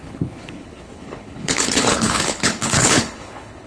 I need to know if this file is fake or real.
fake